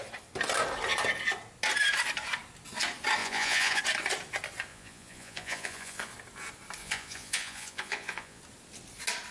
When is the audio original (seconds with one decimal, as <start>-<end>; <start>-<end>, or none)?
0.0-3.2; 3.8-4.7; 6.1-6.8; 8.4-9.3